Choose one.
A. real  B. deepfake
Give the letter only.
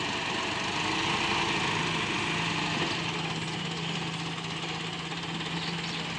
A